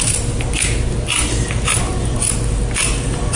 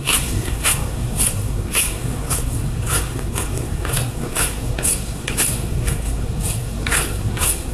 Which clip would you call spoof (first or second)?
second